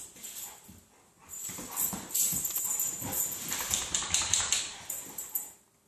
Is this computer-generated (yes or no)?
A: yes